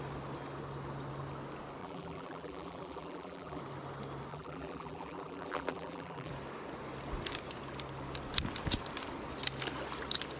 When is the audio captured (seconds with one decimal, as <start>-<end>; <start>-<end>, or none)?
0.0-1.8; 3.6-4.3; 6.3-10.4